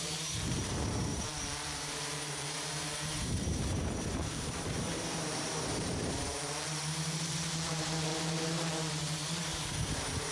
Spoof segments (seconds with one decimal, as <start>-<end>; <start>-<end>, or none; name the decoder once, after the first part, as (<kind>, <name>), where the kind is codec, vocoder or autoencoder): 0.0-10.3 (vocoder, BigVGAN v2)